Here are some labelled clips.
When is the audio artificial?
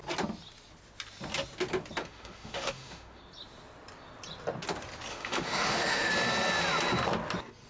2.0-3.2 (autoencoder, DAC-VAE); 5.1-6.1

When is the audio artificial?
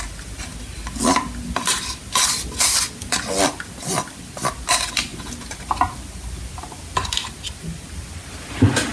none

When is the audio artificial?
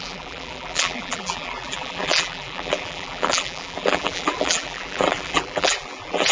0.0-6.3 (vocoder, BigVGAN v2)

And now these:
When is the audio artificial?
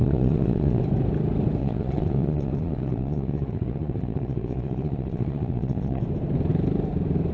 0.0-0.8 (vocoder, Vocos); 1.6-6.0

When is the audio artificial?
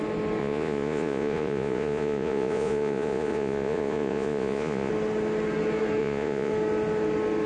0.4-4.9 (vocoder, Vocos); 6.0-6.5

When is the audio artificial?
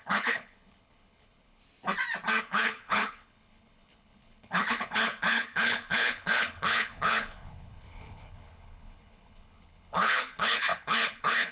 0.0-1.6 (codec, HILCodec); 2.4-11.5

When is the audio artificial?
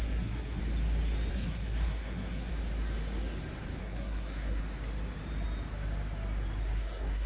0.0-0.6 (codec, SNAC); 1.3-2.5; 3.8-4.6; 6.6-7.3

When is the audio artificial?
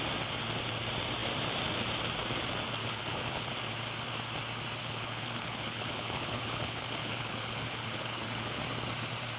2.8-3.5 (codec, HILCodec); 4.8-8.6